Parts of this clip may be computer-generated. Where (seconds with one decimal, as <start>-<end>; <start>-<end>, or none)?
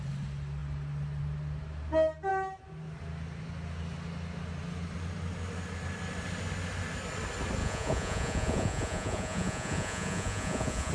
7.6-10.9